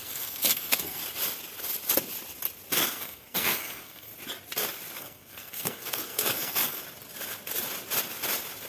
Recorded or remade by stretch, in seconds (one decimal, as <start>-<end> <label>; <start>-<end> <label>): 0.0-1.0 remade; 1.0-2.7 recorded; 2.7-4.1 remade; 4.1-5.0 recorded; 5.0-6.8 remade; 6.8-8.7 recorded